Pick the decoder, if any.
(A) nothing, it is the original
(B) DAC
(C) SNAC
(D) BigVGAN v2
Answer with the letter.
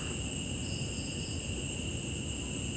A